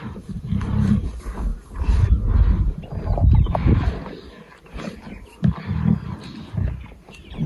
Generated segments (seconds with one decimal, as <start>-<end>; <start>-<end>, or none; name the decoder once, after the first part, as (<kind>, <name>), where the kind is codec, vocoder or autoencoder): none